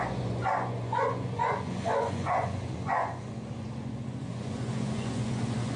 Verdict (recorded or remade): remade